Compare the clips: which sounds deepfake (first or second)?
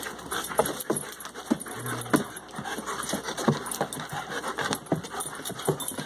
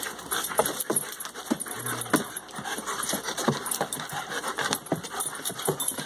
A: second